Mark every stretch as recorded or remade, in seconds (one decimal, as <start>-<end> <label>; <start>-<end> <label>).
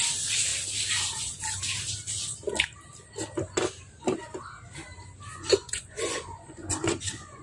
0.0-5.3 recorded; 5.3-7.4 remade